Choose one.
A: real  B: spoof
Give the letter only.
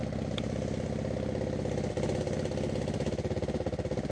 A